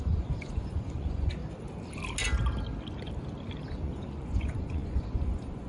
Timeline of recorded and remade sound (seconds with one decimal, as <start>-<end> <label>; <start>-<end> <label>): 0.0-1.4 remade; 1.4-3.8 recorded; 3.8-5.7 remade